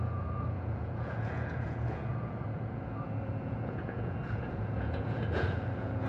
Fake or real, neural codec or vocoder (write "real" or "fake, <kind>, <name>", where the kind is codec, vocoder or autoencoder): fake, vocoder, Vocos